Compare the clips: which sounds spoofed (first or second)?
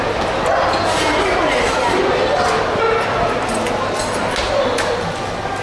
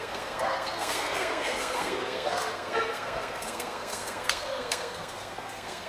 second